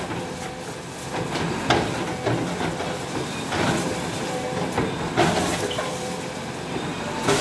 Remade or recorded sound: recorded